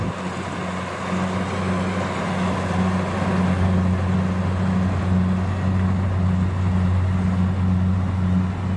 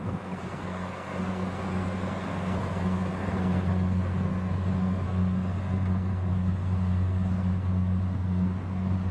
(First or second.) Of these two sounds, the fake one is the second